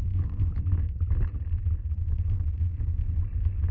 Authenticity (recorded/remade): recorded